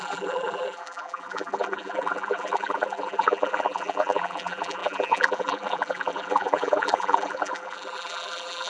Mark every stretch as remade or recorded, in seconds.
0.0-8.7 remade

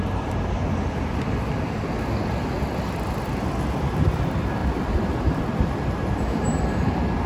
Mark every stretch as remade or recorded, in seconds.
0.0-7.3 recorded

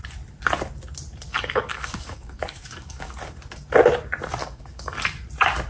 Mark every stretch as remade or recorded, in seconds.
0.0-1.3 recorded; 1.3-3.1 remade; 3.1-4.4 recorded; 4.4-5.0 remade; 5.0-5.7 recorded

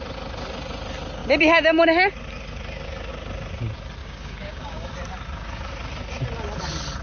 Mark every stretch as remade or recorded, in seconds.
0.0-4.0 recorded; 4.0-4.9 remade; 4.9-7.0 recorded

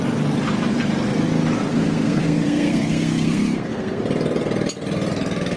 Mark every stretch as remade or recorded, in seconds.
0.0-1.7 recorded; 1.7-4.0 remade; 4.0-5.6 recorded

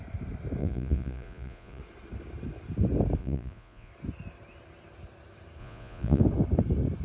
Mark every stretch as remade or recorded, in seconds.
0.0-0.6 recorded; 0.6-1.8 remade; 1.8-3.2 recorded; 3.2-3.9 remade; 3.9-5.6 recorded; 5.6-6.2 remade; 6.2-7.0 recorded